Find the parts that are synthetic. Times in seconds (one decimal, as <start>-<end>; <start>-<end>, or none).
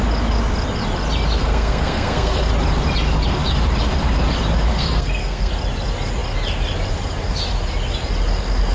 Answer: 1.4-2.4; 4.7-5.5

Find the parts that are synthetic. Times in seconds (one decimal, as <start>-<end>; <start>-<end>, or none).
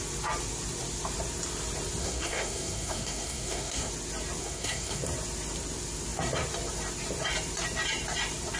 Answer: 2.0-3.9; 4.4-5.0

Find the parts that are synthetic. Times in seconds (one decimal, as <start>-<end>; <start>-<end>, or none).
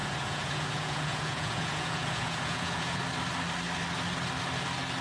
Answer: 0.0-3.0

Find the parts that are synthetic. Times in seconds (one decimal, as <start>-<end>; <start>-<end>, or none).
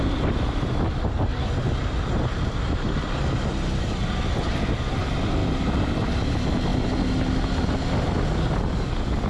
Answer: none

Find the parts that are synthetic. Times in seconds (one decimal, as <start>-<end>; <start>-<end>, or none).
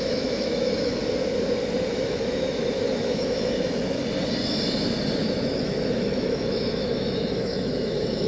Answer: 0.0-1.0; 1.9-4.0; 5.2-8.3